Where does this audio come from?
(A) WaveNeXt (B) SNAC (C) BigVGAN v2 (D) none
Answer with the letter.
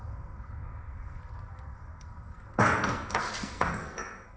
B